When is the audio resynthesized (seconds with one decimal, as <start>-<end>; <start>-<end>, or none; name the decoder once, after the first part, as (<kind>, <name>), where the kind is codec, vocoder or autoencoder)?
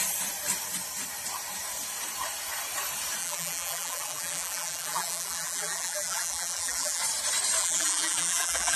3.2-7.0 (vocoder, BigVGAN v2); 7.6-8.8